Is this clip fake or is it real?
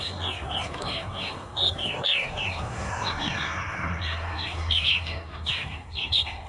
fake